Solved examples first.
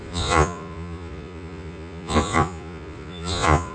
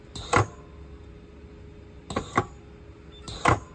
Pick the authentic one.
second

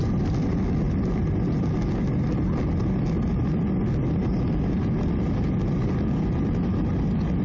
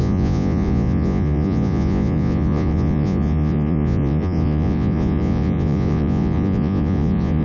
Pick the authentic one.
first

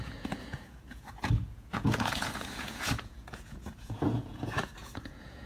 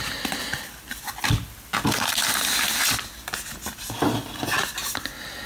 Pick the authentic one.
second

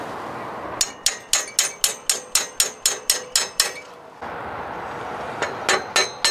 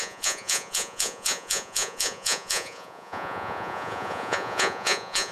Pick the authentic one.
first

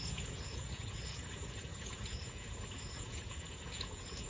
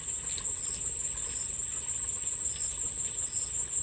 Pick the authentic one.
second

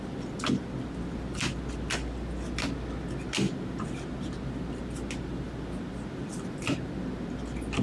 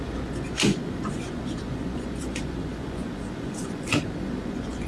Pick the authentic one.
first